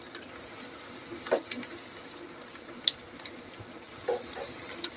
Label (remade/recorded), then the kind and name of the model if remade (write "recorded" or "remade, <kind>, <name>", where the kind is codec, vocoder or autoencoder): recorded